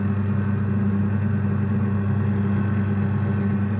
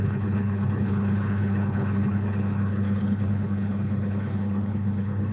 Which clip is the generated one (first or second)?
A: second